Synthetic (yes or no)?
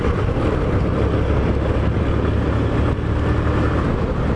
no